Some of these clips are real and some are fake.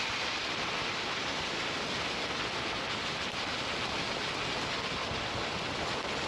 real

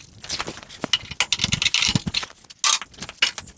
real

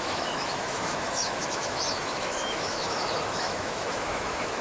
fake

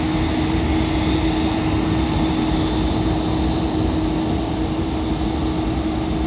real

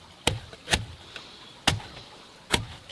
real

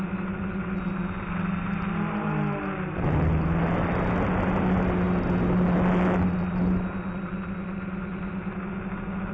real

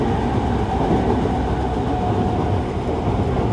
real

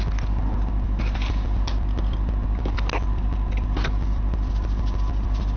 real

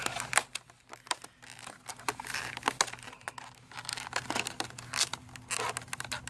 real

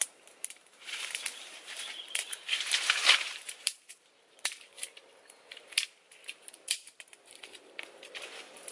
fake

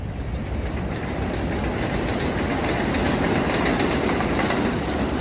real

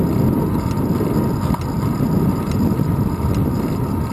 real